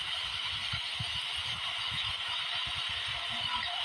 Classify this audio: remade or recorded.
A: recorded